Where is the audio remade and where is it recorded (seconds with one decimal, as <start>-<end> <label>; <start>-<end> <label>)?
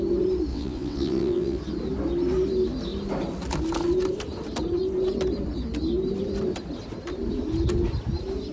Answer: 0.0-0.5 recorded; 0.5-1.6 remade; 1.6-8.5 recorded